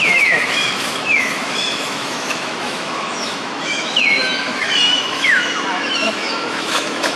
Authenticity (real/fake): fake